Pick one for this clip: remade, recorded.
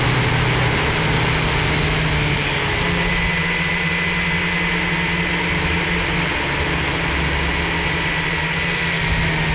recorded